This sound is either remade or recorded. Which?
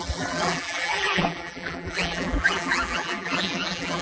remade